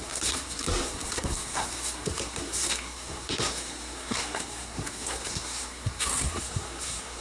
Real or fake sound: fake